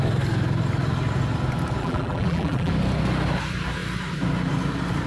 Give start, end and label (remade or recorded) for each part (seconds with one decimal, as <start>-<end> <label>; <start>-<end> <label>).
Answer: 0.0-1.8 recorded; 1.8-2.7 remade; 2.7-5.1 recorded